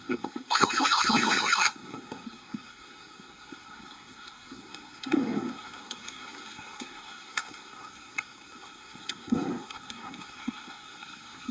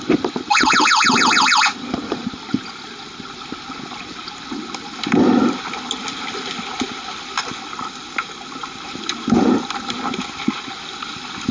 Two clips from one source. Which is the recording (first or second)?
second